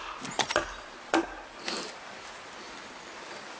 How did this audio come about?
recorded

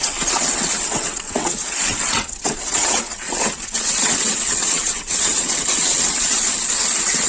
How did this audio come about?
remade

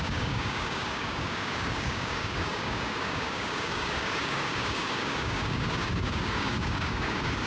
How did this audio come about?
remade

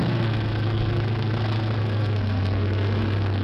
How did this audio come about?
remade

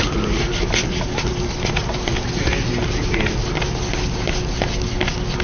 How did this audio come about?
recorded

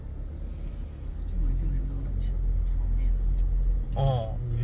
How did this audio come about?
recorded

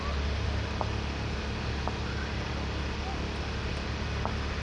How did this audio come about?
recorded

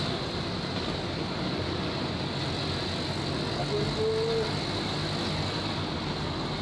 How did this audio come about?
recorded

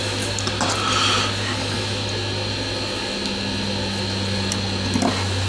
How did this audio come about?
recorded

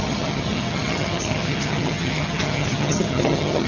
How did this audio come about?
remade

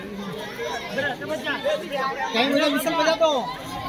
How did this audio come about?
recorded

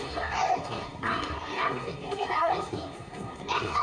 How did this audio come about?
remade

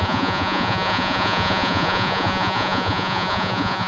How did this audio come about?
remade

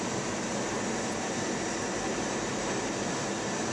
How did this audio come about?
remade